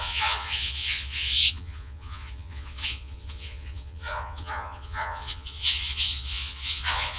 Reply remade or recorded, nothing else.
remade